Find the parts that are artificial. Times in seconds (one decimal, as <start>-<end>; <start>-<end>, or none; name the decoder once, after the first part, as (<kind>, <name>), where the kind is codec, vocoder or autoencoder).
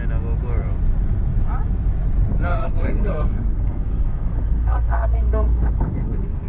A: 2.5-6.5 (codec, SNAC)